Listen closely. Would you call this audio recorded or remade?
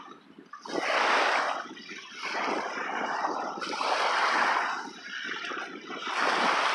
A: recorded